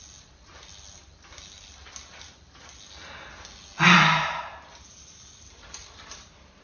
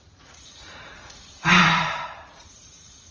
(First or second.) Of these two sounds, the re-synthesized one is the second